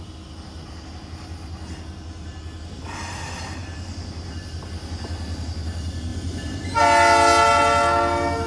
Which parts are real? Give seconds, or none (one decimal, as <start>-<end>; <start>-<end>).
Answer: 0.0-6.1; 6.8-8.5